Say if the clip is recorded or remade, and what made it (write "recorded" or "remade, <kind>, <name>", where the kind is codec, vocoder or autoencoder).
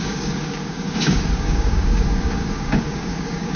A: remade, codec, DAC